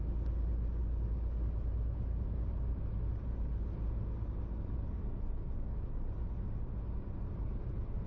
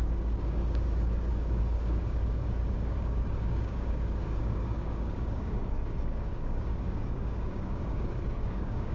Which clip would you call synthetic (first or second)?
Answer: second